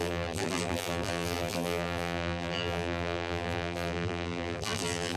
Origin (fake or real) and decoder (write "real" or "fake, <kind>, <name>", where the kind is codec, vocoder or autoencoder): fake, vocoder, BigVGAN v2